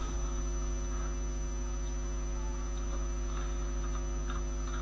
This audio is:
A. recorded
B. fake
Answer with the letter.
A